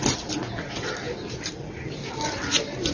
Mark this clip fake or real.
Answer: real